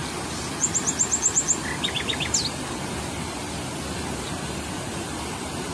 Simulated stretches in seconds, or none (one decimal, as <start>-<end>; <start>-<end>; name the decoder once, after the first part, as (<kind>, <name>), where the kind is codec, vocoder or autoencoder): none